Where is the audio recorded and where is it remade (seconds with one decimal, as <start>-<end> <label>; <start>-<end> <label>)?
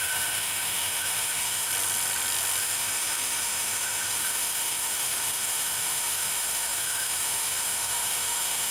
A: 0.0-1.7 remade; 1.7-2.6 recorded; 2.6-8.7 remade